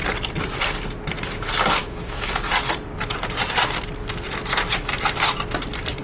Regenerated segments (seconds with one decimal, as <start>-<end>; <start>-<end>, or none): 1.8-2.3